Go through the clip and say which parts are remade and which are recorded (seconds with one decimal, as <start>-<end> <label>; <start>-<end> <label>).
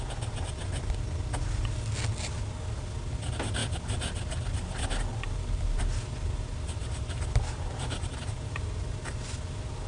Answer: 0.0-5.1 recorded; 5.1-5.8 remade; 5.8-6.8 recorded; 6.8-8.8 remade; 8.8-9.9 recorded